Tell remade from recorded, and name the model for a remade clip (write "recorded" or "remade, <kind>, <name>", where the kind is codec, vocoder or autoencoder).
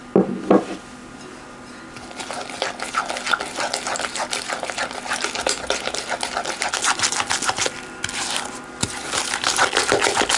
recorded